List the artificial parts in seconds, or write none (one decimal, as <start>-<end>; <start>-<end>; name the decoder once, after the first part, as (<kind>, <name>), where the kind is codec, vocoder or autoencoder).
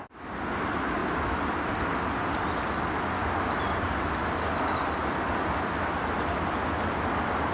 none